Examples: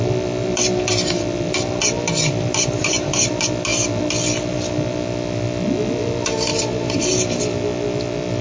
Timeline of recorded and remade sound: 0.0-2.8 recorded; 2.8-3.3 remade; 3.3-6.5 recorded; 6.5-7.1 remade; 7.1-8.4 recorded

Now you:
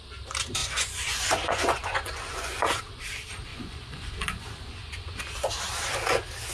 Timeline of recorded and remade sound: 0.0-0.6 recorded; 0.6-2.8 remade; 2.8-3.5 recorded; 3.5-5.2 remade; 5.2-6.5 recorded

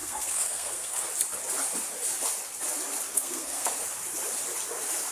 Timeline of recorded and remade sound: 0.0-1.1 remade; 1.1-3.1 recorded; 3.1-3.7 remade; 3.7-5.1 recorded

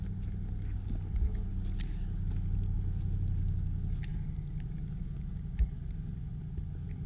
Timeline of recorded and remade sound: 0.0-4.1 recorded; 4.1-5.3 remade; 5.3-7.1 recorded

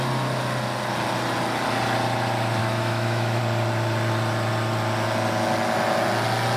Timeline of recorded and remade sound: 0.0-2.6 recorded; 2.6-3.4 remade; 3.4-6.6 recorded

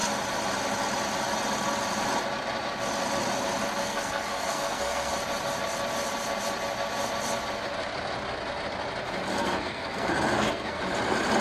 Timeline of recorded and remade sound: 0.0-3.8 recorded; 3.8-5.1 remade; 5.1-9.3 recorded; 9.3-10.8 remade; 10.8-11.4 recorded

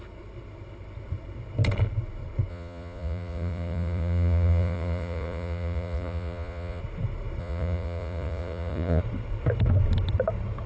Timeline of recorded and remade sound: 0.0-2.5 recorded; 2.5-6.8 remade; 6.8-7.4 recorded; 7.4-9.0 remade; 9.0-10.7 recorded

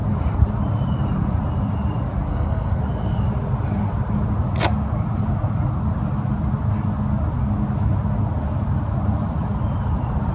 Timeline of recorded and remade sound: 0.0-2.3 recorded; 2.3-2.8 remade; 2.8-10.3 recorded